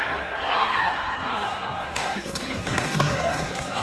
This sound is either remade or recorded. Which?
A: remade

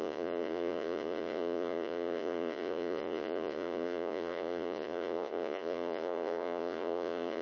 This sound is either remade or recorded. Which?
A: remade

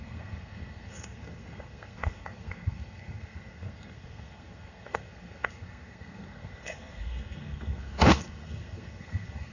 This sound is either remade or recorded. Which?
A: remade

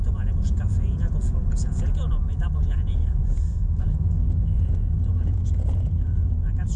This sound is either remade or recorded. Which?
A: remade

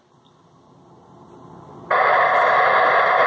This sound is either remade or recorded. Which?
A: recorded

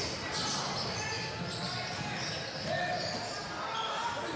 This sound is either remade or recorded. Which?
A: recorded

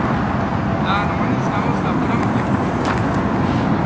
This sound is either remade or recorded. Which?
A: recorded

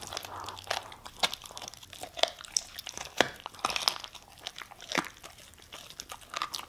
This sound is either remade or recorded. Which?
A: recorded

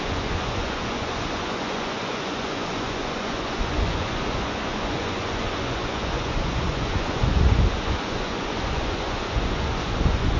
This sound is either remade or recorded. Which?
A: remade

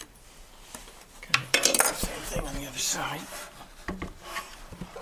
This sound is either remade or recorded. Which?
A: remade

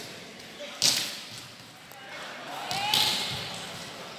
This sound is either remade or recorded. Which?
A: recorded